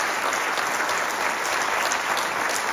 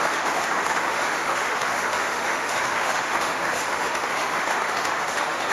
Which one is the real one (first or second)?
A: first